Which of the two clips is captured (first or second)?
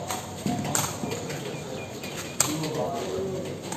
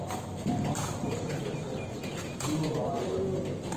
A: first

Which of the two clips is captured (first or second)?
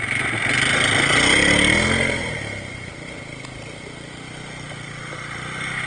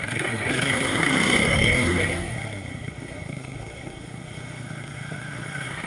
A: first